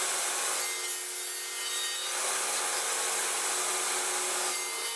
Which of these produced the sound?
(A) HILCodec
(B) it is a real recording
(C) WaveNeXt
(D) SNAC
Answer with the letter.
B